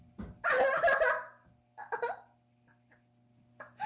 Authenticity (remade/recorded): recorded